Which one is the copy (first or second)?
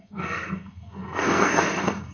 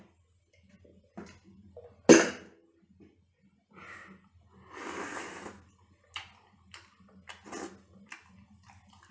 first